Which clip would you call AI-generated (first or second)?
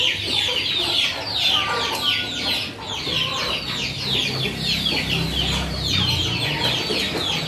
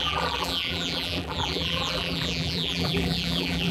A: second